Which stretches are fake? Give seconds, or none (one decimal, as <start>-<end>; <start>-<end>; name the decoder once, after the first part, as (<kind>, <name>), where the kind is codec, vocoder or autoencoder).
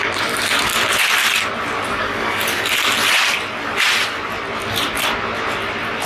0.0-0.7 (codec, DAC); 1.9-2.4